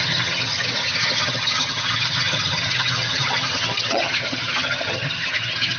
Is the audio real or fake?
fake